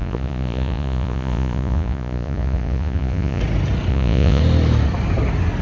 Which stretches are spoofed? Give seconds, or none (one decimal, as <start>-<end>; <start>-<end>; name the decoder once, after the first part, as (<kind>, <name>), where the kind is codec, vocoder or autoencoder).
0.0-3.4 (vocoder, Vocos); 3.9-4.4